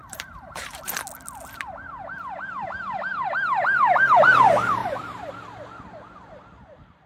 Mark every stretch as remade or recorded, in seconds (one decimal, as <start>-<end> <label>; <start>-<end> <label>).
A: 0.0-0.9 remade; 0.9-4.8 recorded; 4.8-5.3 remade; 5.3-7.1 recorded